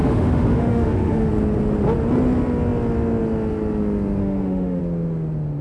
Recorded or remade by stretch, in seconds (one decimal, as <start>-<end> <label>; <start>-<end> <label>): 0.0-1.3 remade; 1.3-4.2 recorded; 4.2-4.8 remade; 4.8-5.6 recorded